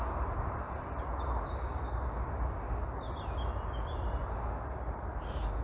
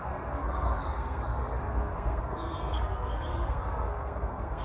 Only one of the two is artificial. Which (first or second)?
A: second